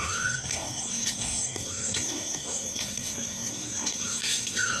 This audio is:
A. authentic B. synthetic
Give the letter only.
B